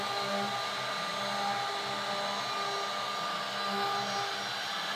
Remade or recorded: recorded